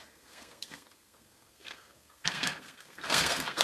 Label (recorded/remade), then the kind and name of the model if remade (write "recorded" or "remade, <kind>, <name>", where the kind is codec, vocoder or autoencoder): remade, codec, SNAC